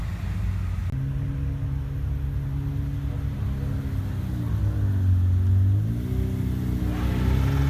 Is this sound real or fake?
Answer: real